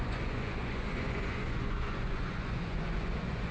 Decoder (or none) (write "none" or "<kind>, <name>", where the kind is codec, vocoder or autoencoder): vocoder, Vocos